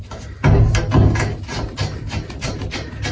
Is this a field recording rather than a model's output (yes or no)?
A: yes